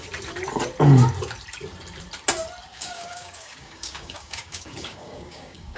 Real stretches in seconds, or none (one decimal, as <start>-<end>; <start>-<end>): 0.0-2.7